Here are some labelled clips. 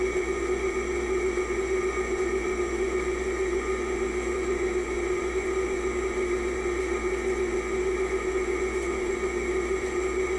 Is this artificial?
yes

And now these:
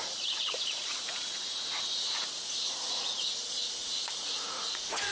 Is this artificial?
yes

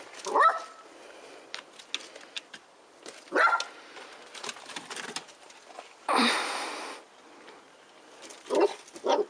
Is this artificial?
no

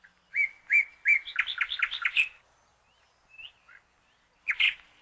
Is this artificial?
no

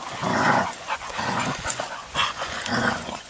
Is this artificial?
yes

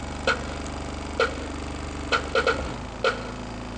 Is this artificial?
no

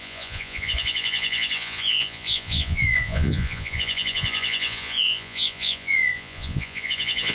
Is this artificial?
yes